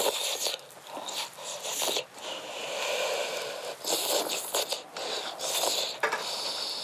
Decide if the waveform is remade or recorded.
recorded